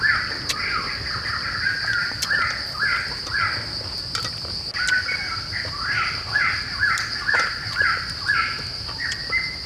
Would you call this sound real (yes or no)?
yes